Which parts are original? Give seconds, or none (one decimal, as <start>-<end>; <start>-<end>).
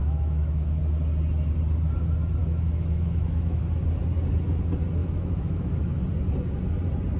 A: 0.8-2.4; 3.6-5.0; 6.0-7.2